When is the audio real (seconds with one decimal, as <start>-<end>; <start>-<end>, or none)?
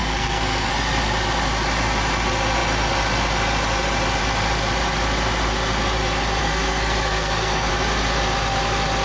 0.7-6.4; 7.7-9.0